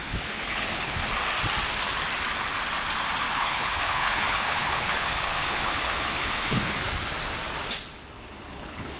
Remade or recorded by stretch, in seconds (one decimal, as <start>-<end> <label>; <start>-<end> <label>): 0.0-1.0 remade; 1.0-3.3 recorded; 3.3-6.9 remade; 6.9-8.5 recorded; 8.5-9.0 remade